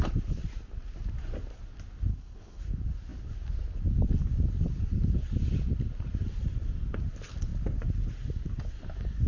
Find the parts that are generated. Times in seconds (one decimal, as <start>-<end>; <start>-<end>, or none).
2.1-2.6